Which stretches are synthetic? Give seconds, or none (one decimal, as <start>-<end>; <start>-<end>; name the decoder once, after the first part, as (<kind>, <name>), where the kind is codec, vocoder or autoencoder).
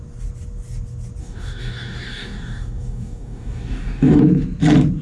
1.2-4.2 (codec, DAC)